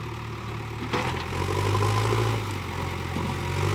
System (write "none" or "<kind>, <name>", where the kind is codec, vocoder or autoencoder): none